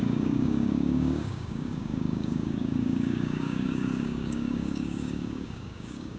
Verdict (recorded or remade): remade